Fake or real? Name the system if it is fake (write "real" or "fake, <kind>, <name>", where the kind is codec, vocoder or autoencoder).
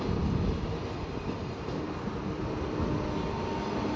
real